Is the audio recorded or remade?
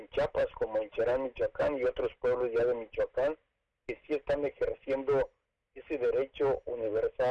recorded